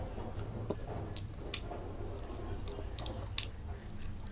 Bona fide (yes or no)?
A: yes